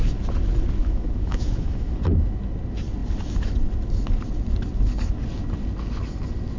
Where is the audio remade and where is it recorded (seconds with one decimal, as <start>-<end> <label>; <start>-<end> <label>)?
0.0-0.8 recorded; 0.8-1.9 remade; 1.9-6.6 recorded